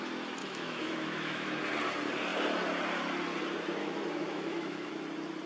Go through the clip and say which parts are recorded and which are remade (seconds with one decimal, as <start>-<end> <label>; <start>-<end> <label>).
0.0-0.4 recorded; 0.4-1.6 remade; 1.6-3.8 recorded; 3.8-4.9 remade; 4.9-5.5 recorded